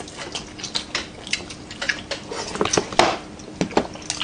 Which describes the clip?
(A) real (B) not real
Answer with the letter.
A